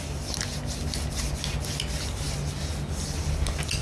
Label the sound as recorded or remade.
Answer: recorded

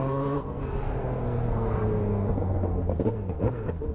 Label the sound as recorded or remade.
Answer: remade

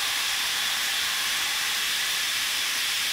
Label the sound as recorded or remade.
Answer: remade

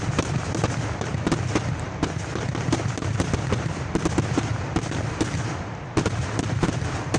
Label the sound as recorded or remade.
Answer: recorded